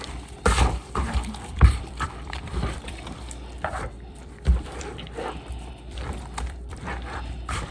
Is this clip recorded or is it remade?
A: remade